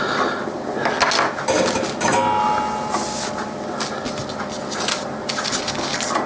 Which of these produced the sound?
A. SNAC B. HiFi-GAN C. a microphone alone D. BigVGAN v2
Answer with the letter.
C